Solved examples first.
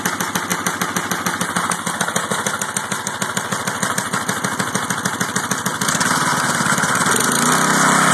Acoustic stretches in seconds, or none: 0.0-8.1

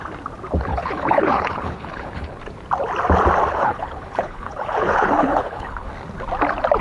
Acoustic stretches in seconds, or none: 0.0-0.7; 2.4-3.5; 5.9-6.8